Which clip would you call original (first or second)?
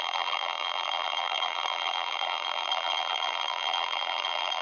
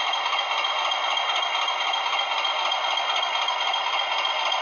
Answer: second